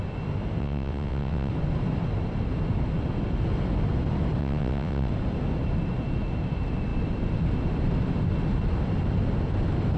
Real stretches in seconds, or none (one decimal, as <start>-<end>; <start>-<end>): 0.0-0.6; 1.5-4.4; 5.1-10.0